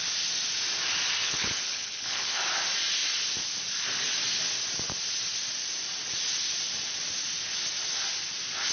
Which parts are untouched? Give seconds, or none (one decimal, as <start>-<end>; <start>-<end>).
0.0-1.2; 2.4-8.7